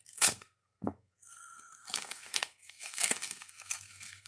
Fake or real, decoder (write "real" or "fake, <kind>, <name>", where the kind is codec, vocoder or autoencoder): fake, codec, SNAC